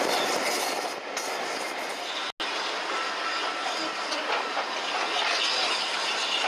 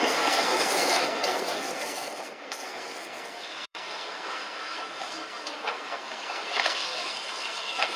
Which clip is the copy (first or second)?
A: second